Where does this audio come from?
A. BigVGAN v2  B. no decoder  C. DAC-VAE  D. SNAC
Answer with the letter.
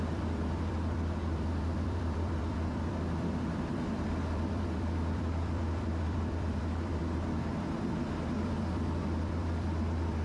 A